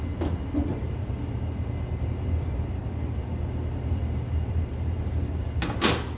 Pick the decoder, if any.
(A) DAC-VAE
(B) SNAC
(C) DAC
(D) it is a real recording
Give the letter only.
D